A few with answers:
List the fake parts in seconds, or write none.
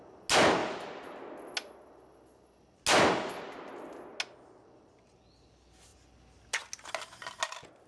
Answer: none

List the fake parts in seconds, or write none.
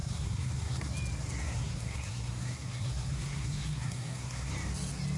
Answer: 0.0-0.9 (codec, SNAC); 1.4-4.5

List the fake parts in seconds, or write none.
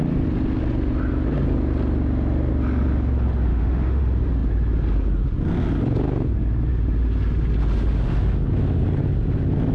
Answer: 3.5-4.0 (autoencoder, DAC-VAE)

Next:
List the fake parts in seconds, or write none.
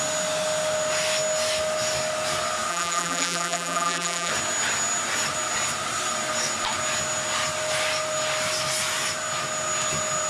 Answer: 2.7-4.3 (vocoder, BigVGAN v2)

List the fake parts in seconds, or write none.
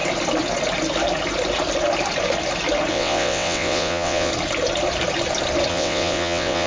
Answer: 2.9-4.3 (vocoder, WaveNeXt); 5.7-6.7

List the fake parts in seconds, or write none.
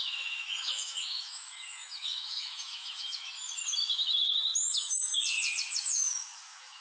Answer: 0.0-6.8 (autoencoder, DAC-VAE)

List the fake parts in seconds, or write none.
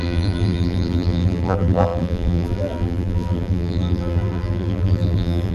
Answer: 0.0-5.5 (vocoder, BigVGAN v2)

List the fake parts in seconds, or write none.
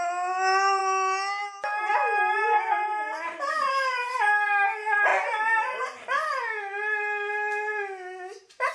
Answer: none